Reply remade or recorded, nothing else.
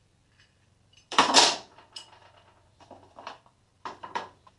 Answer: remade